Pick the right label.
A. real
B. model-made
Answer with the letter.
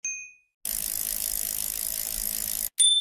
A